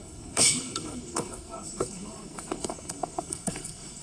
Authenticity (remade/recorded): remade